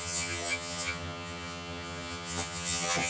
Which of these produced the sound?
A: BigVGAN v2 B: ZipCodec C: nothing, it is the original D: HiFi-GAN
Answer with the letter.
D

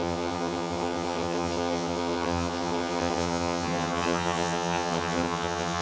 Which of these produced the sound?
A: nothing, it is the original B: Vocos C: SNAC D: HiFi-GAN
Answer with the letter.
D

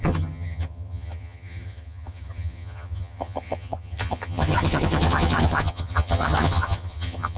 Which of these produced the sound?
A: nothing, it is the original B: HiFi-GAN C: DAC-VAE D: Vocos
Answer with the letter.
B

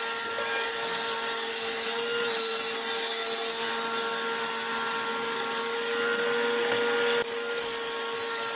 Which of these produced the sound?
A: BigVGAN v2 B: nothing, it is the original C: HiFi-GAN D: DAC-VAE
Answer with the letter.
B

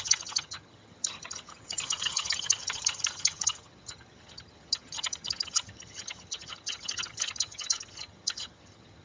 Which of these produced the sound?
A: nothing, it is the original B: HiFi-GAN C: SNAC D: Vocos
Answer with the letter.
B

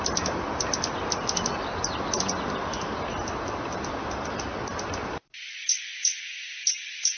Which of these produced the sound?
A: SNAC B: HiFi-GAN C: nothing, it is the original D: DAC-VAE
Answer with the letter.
C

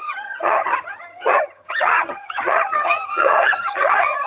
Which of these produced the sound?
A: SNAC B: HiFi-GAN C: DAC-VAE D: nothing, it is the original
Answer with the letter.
B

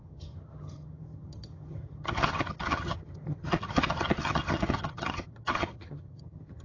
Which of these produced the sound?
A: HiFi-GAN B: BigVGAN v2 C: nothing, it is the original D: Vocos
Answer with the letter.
A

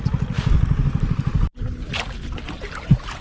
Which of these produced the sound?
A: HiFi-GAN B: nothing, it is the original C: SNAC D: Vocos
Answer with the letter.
B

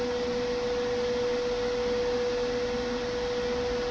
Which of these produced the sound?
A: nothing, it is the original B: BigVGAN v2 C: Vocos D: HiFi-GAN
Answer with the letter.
A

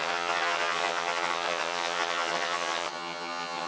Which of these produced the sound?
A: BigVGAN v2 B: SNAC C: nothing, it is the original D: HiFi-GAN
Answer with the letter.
D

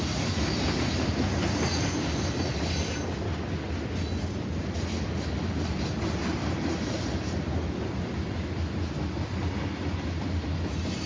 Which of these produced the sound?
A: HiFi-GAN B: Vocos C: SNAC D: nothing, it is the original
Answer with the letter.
D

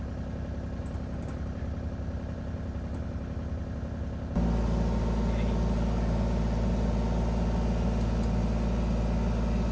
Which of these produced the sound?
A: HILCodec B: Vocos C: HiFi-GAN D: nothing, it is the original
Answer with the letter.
D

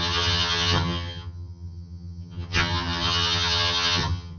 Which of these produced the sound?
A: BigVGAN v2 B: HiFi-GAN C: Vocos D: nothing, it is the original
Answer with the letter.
B